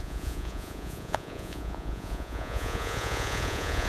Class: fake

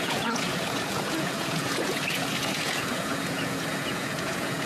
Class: fake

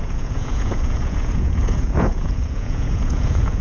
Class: fake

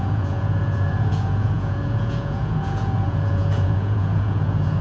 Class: fake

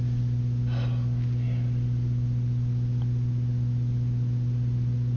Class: real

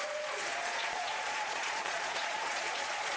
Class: fake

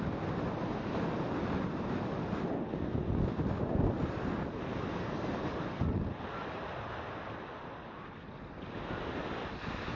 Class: real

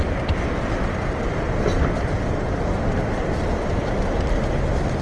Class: real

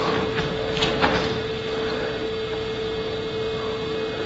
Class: real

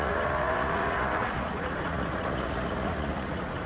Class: fake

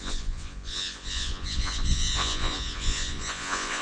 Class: fake